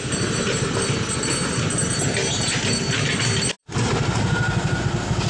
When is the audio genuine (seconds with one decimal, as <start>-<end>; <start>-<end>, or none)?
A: 0.0-3.6; 4.8-5.3